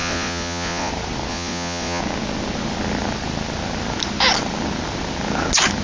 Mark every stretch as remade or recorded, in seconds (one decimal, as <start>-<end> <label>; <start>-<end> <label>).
0.0-0.9 remade; 0.9-1.3 recorded; 1.3-2.0 remade; 2.0-5.8 recorded